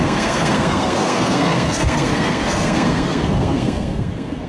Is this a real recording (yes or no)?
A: no